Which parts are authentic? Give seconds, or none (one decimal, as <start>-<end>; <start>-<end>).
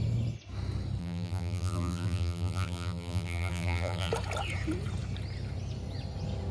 0.0-1.0; 4.1-6.5